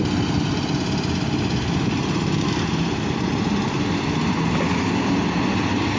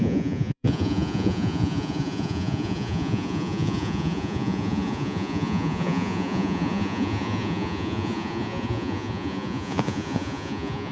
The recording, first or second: first